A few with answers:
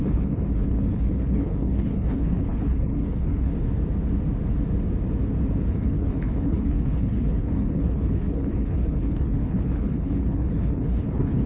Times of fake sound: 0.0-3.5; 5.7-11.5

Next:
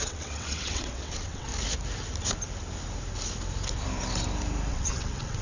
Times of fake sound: 0.0-1.5; 4.7-5.4